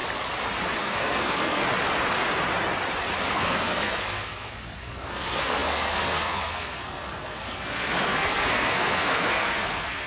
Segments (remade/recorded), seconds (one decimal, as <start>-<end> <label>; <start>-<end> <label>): 0.0-0.8 recorded; 0.8-1.6 remade; 1.6-3.3 recorded; 3.3-10.1 remade